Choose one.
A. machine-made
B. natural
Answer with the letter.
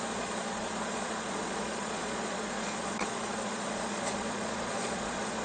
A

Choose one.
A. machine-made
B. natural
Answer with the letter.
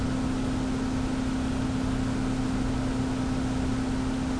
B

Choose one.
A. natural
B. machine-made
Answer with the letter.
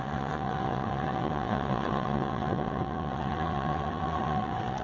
B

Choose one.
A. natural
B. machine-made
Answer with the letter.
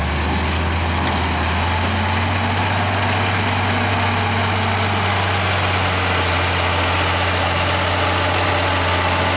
A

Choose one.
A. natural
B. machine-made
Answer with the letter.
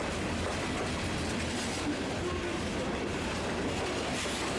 A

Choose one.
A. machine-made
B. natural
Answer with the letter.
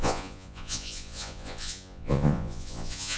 A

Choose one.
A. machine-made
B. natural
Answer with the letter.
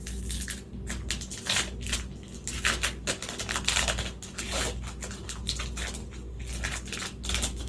B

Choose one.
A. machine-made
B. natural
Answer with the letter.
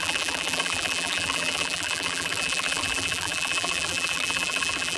A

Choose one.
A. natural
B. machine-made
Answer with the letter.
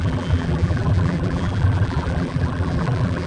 B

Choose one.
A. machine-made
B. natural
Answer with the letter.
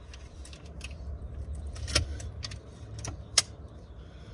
A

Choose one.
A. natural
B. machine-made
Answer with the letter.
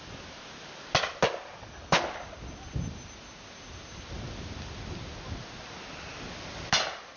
A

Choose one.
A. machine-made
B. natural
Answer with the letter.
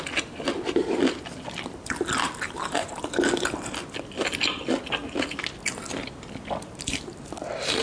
B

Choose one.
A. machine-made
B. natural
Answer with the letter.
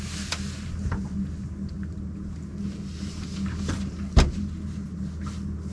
B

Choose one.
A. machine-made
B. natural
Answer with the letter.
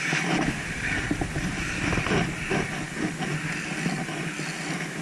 B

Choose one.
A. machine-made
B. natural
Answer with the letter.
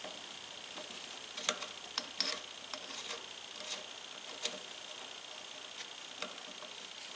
B